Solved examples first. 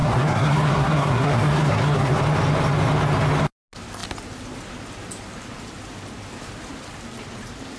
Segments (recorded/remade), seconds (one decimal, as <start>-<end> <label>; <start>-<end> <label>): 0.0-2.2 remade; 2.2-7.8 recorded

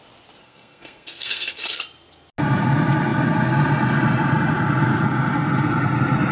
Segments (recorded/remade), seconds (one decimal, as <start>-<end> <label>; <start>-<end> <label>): 0.0-0.4 recorded; 0.4-1.8 remade; 1.8-6.3 recorded

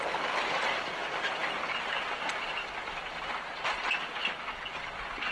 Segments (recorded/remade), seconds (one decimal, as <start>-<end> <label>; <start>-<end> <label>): 0.0-5.3 recorded

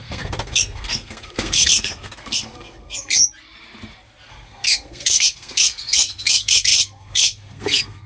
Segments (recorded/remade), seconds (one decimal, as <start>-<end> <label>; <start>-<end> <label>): 0.0-3.2 remade; 3.2-4.3 recorded; 4.3-8.1 remade

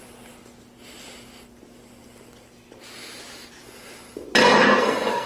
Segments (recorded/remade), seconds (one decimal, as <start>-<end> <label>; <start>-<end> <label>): 0.0-4.4 recorded; 4.4-5.3 remade

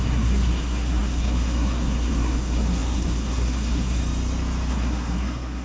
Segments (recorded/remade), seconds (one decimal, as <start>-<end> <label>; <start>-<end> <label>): 0.0-4.0 remade; 4.0-4.7 recorded; 4.7-5.6 remade

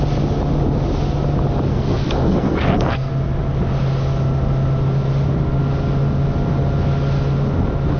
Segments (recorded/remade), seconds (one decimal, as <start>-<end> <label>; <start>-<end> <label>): 0.0-1.7 recorded; 1.7-3.1 remade; 3.1-8.0 recorded